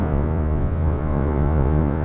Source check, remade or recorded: remade